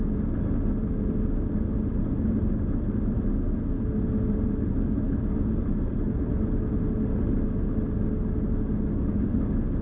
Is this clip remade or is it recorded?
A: recorded